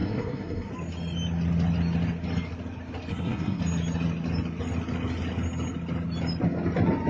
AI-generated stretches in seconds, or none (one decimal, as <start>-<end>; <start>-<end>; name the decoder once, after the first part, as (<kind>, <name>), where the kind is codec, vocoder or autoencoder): 0.0-0.7 (codec, SNAC); 3.1-3.6